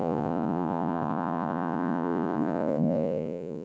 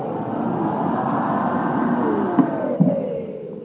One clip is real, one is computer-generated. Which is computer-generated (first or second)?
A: first